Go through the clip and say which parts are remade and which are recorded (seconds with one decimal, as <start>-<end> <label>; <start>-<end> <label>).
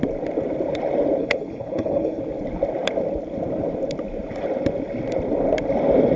0.0-1.2 recorded; 1.2-2.2 remade; 2.2-6.2 recorded